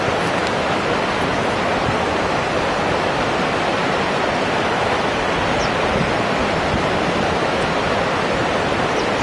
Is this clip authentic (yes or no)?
yes